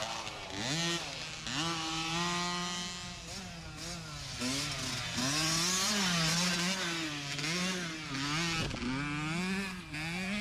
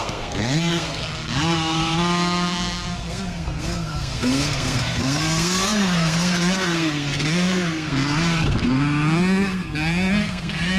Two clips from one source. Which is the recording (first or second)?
first